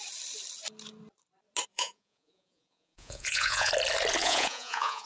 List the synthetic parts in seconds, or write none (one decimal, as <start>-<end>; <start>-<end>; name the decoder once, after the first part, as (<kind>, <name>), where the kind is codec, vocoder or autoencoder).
1.7-3.7 (vocoder, Vocos); 4.2-5.1